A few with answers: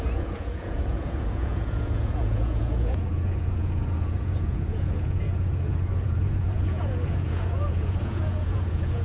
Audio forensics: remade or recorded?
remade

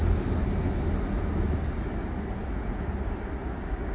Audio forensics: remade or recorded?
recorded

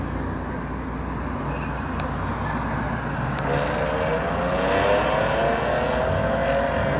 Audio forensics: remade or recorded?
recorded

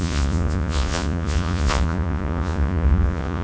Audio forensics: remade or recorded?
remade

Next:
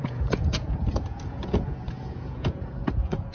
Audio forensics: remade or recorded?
remade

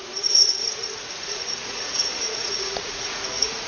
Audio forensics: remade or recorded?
remade